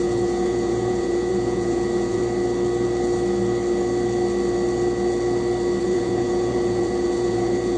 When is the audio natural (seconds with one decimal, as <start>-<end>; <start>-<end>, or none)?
2.2-5.8